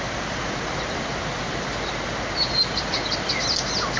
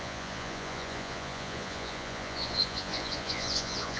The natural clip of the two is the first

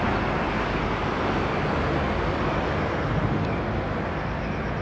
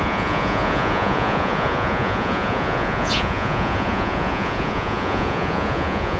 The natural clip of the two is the first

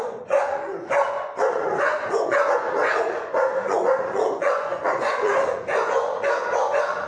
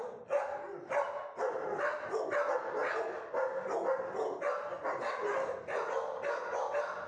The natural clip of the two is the second